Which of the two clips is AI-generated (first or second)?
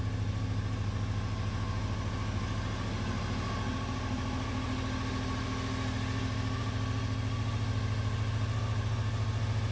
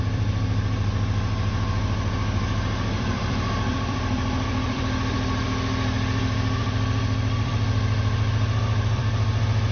second